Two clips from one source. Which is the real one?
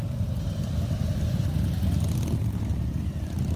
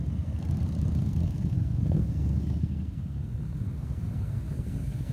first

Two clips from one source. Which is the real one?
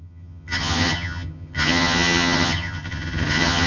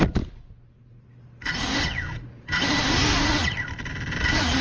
second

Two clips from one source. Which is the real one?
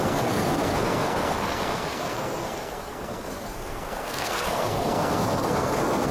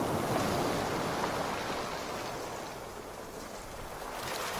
second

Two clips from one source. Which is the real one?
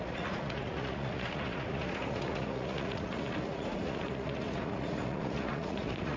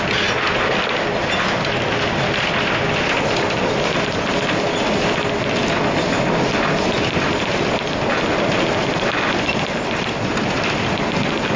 second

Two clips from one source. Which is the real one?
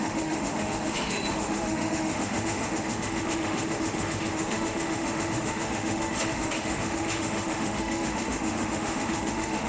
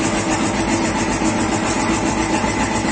second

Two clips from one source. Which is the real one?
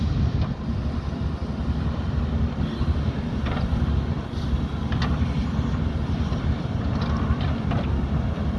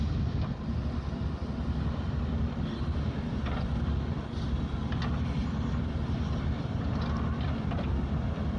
second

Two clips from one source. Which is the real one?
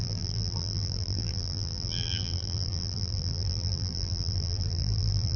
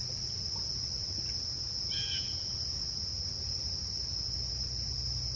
second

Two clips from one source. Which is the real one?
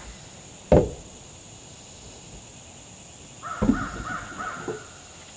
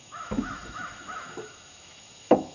first